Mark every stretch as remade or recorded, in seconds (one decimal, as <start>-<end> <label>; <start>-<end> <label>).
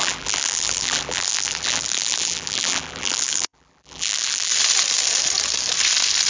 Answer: 0.0-4.5 remade; 4.5-6.3 recorded